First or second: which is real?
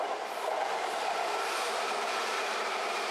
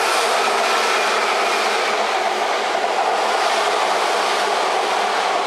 second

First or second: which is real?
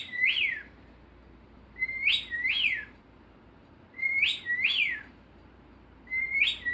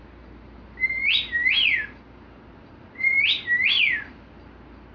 second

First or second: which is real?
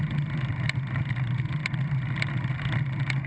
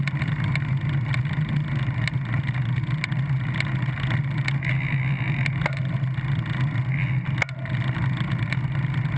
second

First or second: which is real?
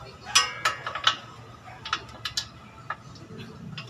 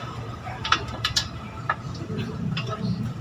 first